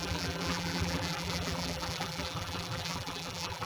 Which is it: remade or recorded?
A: remade